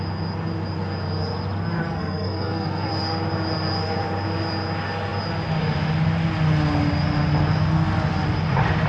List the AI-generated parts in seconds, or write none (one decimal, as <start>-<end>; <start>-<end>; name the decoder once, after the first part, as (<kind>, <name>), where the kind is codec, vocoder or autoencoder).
1.8-2.9 (codec, SNAC)